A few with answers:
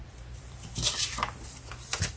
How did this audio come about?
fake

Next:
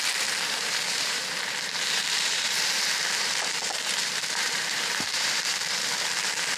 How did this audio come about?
fake